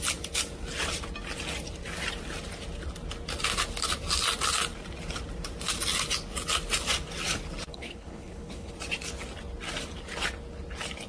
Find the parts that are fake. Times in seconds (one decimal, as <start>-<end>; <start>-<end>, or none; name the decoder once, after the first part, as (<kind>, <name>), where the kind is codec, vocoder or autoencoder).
7.7-8.7 (codec, HILCodec)